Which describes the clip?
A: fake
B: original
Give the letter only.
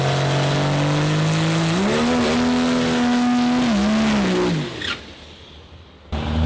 B